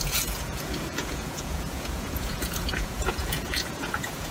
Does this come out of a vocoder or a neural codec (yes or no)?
yes